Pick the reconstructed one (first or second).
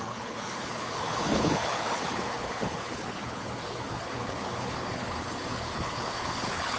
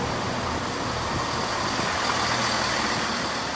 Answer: first